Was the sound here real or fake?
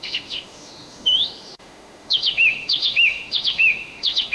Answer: fake